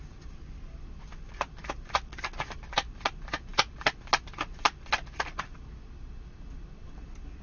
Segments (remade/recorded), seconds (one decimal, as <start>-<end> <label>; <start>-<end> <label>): 0.0-7.4 recorded